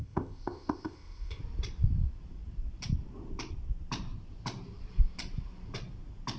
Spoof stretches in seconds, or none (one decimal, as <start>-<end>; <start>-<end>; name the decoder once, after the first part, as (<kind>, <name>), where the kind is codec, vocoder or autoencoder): 0.0-1.4 (codec, ZipCodec)